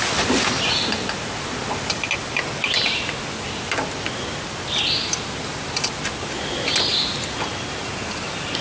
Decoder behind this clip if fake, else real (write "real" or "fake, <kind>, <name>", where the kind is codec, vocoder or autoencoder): real